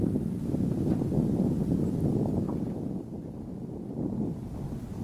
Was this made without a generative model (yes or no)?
yes